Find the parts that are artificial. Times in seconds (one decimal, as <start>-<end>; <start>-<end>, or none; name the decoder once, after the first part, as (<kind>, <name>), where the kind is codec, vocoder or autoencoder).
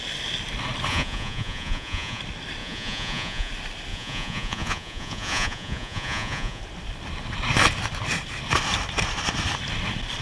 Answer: 0.9-2.2 (vocoder, Vocos); 2.6-3.5; 3.9-6.6